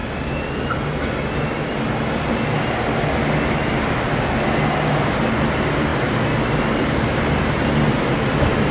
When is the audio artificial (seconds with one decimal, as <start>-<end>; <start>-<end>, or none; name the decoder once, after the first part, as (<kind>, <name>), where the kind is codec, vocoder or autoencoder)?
none